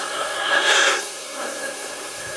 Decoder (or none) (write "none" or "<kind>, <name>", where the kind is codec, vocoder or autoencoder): codec, SNAC